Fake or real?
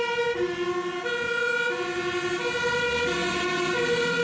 real